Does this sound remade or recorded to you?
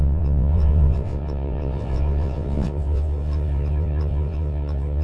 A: remade